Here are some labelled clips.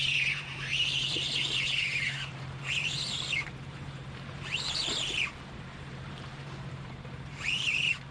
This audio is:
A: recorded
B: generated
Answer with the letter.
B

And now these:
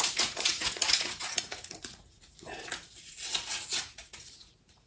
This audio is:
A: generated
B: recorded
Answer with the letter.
A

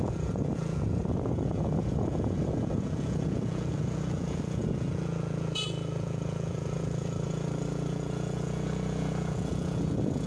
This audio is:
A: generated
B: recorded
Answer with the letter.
A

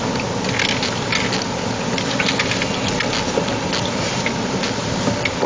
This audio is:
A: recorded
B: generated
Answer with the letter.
A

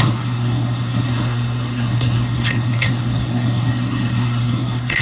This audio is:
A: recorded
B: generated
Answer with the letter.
B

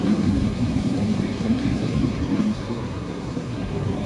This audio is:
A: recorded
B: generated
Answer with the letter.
B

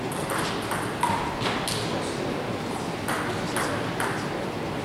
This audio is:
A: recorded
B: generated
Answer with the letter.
A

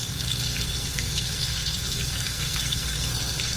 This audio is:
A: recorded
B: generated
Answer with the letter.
B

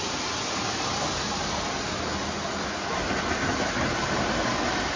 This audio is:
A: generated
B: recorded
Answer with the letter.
B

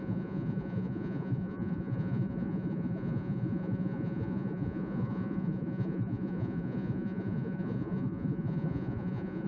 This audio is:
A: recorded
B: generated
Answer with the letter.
B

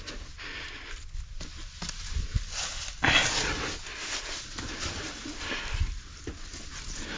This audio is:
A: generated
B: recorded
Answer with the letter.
B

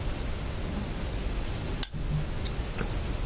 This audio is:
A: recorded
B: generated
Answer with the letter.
A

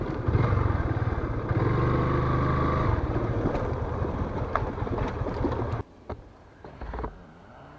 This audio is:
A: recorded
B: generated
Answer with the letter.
A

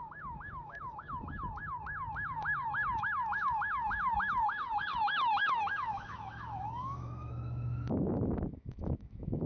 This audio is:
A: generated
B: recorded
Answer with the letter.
A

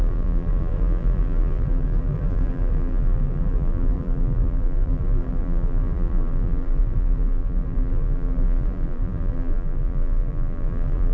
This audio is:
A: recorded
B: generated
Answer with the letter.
B